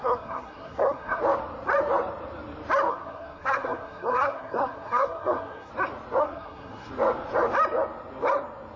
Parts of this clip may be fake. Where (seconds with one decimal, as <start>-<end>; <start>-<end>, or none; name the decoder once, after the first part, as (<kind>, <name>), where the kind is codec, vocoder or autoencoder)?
0.0-1.2 (codec, SNAC); 2.9-5.7; 6.2-6.9